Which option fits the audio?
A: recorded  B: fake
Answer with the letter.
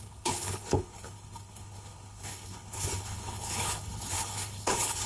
B